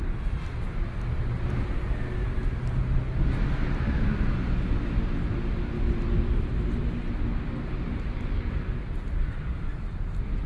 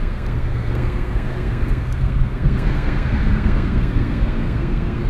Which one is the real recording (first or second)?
first